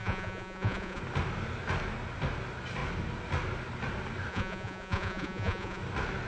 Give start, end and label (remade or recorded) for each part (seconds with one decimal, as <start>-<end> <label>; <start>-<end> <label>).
0.0-1.0 remade; 1.0-4.3 recorded; 4.3-5.8 remade; 5.8-6.3 recorded